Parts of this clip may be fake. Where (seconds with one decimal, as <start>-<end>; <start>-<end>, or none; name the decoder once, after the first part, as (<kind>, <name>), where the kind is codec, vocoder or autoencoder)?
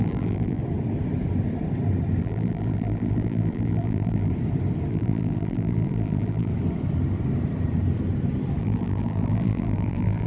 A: 0.0-0.6 (vocoder, BigVGAN v2); 2.2-4.3; 4.9-6.5; 8.6-10.3